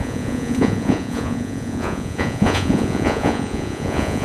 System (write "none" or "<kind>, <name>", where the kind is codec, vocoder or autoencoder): vocoder, Vocos